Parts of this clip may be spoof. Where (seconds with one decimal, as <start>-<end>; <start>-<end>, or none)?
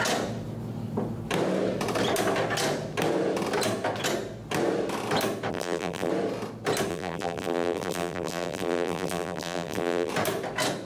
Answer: 5.5-6.1; 6.9-10.1